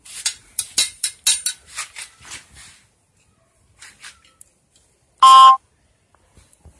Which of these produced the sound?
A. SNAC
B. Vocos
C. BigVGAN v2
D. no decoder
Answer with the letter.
D